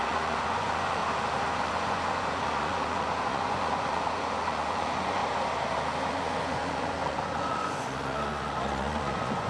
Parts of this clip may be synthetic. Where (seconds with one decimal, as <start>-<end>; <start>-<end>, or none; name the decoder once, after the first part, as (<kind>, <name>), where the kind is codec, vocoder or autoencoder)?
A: 0.0-1.0 (vocoder, Vocos); 1.6-5.2; 6.1-9.5